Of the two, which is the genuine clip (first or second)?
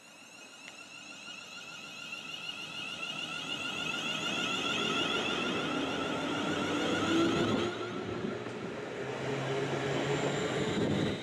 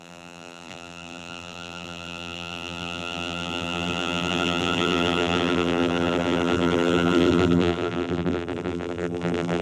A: first